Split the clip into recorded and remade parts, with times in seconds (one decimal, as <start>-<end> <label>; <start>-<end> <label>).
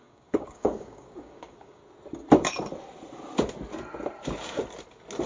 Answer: 0.0-1.8 remade; 1.8-5.3 recorded